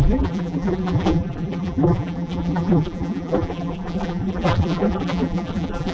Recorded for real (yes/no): no